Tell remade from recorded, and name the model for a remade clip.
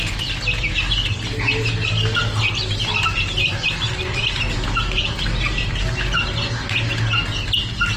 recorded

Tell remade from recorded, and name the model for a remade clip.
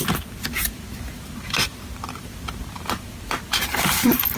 recorded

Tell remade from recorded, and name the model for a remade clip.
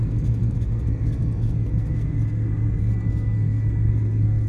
remade, codec, SNAC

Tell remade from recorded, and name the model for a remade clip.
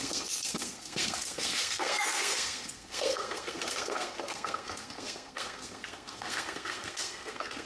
remade, codec, SNAC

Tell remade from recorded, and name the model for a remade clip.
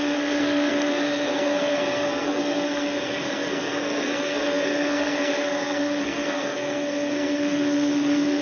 remade, codec, SNAC